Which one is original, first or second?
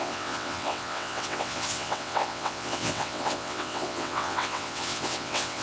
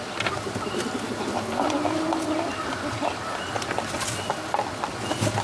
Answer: second